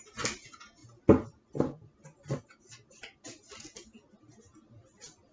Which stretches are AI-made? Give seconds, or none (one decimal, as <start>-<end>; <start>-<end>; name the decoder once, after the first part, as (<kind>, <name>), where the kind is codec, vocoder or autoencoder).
none